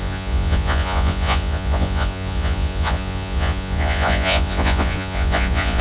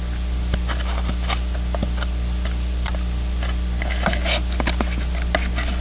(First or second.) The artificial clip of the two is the first